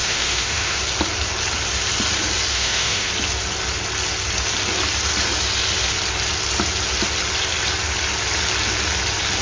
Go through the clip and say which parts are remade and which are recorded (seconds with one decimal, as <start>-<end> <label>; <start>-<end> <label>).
0.0-0.8 remade; 0.8-2.5 recorded; 2.5-3.1 remade; 3.1-9.4 recorded